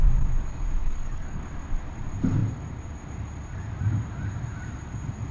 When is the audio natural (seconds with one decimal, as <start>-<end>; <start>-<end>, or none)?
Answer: 0.0-0.8; 1.4-5.3